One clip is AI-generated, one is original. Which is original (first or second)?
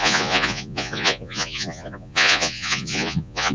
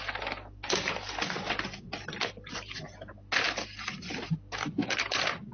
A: second